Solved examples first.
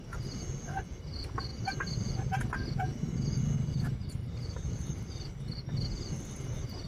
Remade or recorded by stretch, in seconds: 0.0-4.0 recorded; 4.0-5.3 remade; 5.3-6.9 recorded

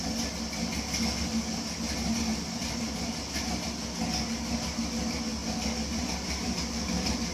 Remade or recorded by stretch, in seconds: 0.0-2.3 recorded; 2.3-2.9 remade; 2.9-7.3 recorded

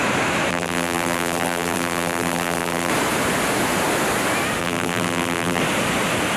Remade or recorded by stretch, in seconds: 0.0-0.5 recorded; 0.5-2.9 remade; 2.9-4.6 recorded; 4.6-5.6 remade; 5.6-6.4 recorded